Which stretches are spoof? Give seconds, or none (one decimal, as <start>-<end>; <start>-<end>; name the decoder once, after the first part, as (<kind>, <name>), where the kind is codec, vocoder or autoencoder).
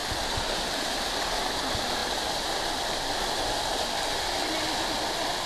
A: 0.0-0.6 (vocoder, BigVGAN v2)